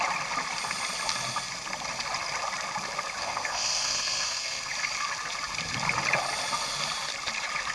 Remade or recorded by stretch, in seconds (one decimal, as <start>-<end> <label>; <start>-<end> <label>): 0.0-3.2 recorded; 3.2-4.7 remade; 4.7-7.7 recorded